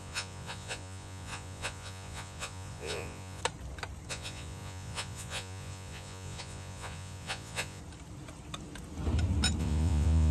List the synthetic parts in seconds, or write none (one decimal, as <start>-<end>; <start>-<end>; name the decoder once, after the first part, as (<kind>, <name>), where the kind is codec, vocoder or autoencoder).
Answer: 0.0-3.4 (vocoder, Vocos); 4.1-7.8; 9.6-10.3